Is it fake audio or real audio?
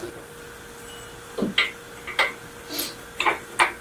real